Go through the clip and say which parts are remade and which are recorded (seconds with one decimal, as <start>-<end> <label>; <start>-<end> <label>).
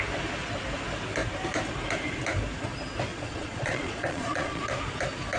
0.0-3.1 recorded; 3.1-4.7 remade; 4.7-5.4 recorded